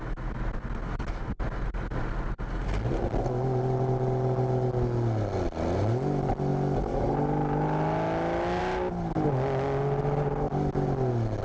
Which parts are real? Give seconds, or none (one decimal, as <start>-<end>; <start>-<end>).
0.0-11.4